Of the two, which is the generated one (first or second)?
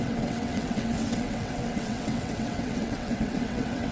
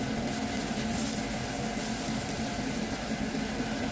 first